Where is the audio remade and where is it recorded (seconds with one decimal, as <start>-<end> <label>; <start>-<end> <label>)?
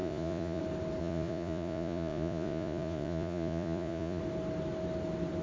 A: 0.0-0.6 remade; 0.6-1.0 recorded; 1.0-4.2 remade; 4.2-5.4 recorded